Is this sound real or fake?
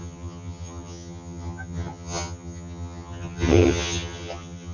fake